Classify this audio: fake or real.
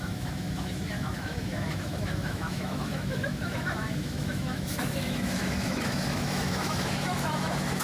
fake